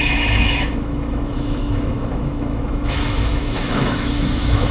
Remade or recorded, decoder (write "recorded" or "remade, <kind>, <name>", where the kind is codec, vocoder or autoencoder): remade, autoencoder, DAC-VAE